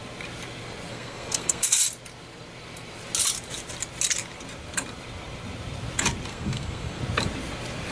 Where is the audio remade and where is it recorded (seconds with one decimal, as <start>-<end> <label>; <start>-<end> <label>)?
0.0-0.9 recorded; 0.9-1.8 remade; 1.8-6.3 recorded; 6.3-7.0 remade; 7.0-7.9 recorded